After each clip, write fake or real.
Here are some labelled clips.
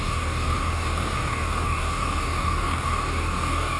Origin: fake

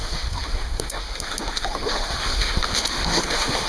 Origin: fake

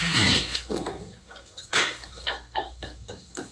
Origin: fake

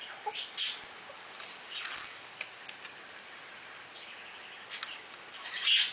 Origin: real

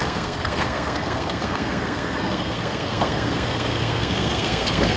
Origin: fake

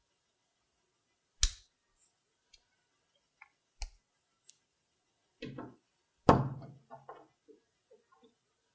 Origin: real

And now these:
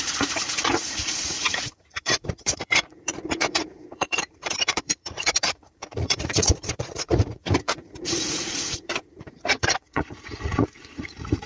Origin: fake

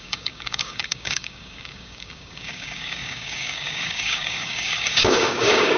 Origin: fake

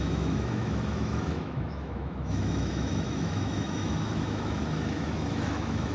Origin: fake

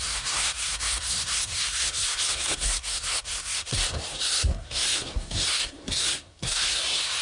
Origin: fake